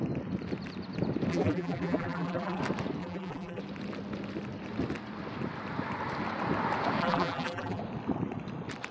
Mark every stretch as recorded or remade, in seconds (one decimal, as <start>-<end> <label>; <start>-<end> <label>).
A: 0.0-1.3 recorded; 1.3-2.6 remade; 2.6-3.0 recorded; 3.0-3.6 remade; 3.6-7.0 recorded; 7.0-7.8 remade; 7.8-8.9 recorded